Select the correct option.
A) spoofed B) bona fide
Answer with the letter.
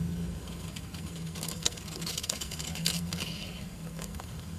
A